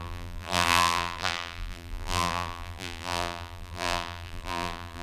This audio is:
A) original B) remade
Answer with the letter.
B